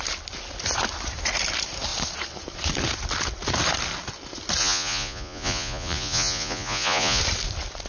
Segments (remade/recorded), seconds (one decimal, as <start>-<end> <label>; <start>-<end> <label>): 0.0-4.6 recorded; 4.6-7.2 remade; 7.2-7.9 recorded

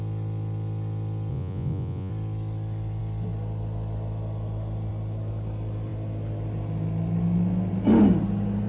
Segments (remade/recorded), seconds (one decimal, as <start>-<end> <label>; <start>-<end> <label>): 0.0-1.3 recorded; 1.3-2.1 remade; 2.1-8.7 recorded

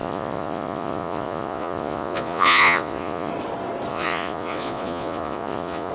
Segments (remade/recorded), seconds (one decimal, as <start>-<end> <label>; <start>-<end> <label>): 0.0-3.3 remade; 3.3-3.9 recorded; 3.9-5.9 remade

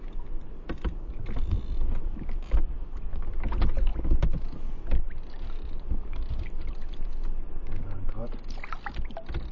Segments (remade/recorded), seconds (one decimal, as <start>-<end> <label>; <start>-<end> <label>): 0.0-9.5 recorded

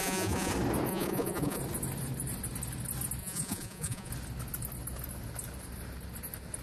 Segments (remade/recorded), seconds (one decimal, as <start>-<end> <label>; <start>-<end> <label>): 0.0-0.5 remade; 0.5-0.9 recorded; 0.9-1.6 remade; 1.6-3.2 recorded; 3.2-4.1 remade; 4.1-6.6 recorded

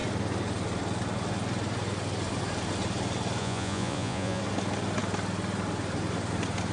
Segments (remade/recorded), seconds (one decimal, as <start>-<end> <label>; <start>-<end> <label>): 0.0-3.4 recorded; 3.4-4.4 remade; 4.4-6.7 recorded

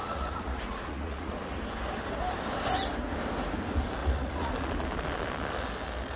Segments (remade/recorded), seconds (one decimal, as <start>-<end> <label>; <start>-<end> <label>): 0.0-1.6 remade; 1.6-4.0 recorded; 4.0-4.5 remade; 4.5-6.2 recorded

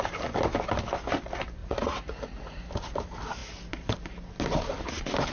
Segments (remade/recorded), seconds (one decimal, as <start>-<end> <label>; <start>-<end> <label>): 0.0-1.6 recorded; 1.6-2.6 remade; 2.6-5.3 recorded